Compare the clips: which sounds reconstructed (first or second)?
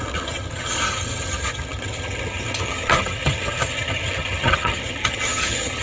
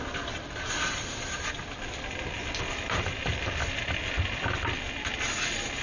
first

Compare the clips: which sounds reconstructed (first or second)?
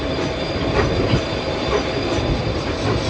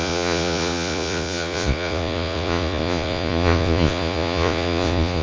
second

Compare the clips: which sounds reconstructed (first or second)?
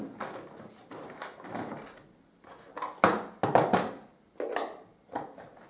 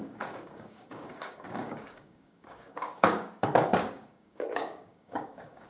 second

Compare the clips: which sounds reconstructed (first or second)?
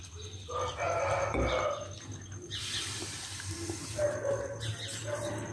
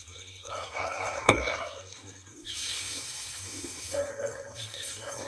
second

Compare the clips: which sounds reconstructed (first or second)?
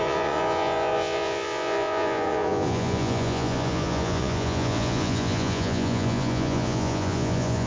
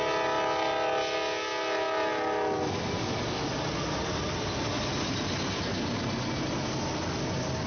first